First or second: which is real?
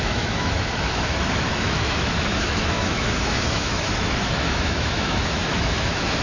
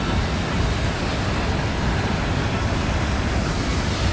second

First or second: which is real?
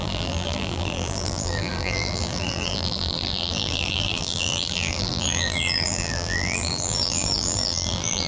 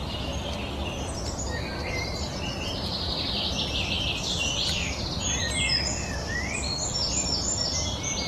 second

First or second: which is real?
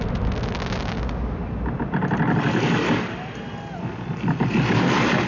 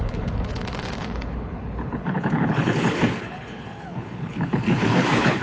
first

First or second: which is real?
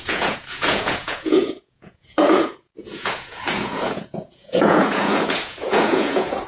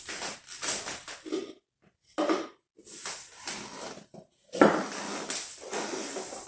second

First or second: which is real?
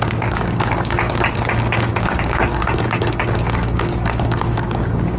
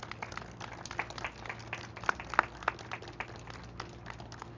second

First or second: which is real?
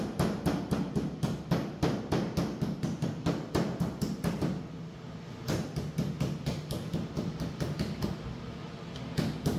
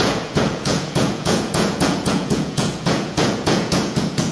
first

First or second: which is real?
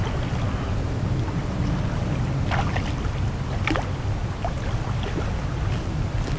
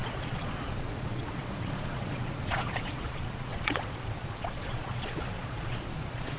first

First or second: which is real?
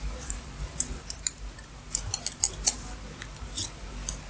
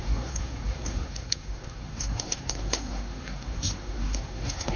first